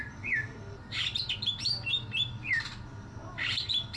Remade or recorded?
remade